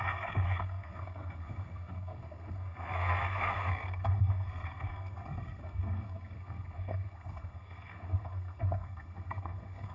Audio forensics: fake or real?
fake